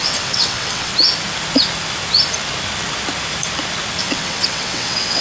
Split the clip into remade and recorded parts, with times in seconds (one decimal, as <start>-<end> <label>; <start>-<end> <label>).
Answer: 0.0-0.9 remade; 0.9-4.0 recorded; 4.0-5.2 remade

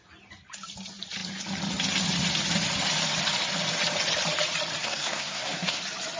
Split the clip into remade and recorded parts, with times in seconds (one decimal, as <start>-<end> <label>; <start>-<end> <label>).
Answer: 0.0-4.8 recorded; 4.8-5.8 remade; 5.8-6.2 recorded

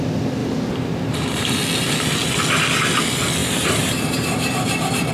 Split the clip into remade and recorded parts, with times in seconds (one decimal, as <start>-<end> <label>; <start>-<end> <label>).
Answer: 0.0-0.4 recorded; 0.4-1.6 remade; 1.6-3.4 recorded; 3.4-5.1 remade

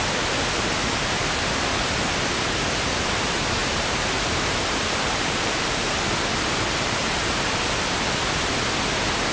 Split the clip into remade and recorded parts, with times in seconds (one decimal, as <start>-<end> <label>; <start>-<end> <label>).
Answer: 0.0-3.6 recorded; 3.6-5.8 remade; 5.8-9.3 recorded